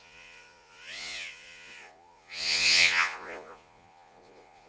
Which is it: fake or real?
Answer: fake